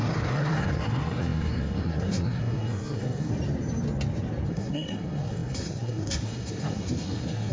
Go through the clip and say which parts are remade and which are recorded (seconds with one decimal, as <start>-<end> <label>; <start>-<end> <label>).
0.0-3.3 remade; 3.3-4.5 recorded; 4.5-7.5 remade